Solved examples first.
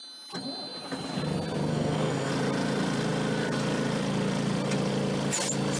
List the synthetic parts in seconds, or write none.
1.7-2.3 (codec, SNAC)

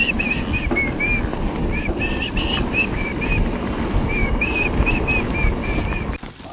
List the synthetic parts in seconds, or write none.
4.2-5.0 (codec, DAC)

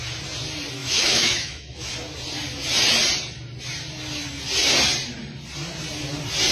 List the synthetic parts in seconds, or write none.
0.8-1.9 (autoencoder, DAC-VAE)

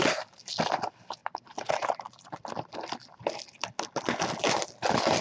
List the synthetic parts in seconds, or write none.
1.2-3.2 (vocoder, BigVGAN v2)

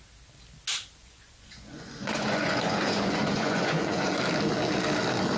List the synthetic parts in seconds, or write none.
1.0-4.2 (vocoder, Vocos)